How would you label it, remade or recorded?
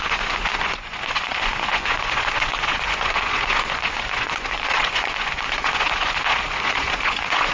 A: remade